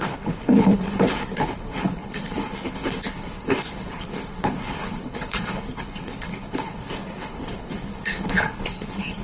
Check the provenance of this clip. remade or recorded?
remade